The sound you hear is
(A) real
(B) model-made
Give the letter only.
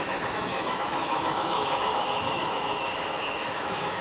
B